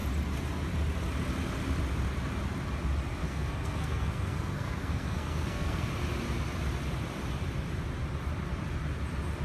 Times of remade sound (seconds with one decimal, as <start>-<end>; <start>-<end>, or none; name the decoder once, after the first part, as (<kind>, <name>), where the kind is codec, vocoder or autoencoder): 3.2-5.9 (codec, SNAC)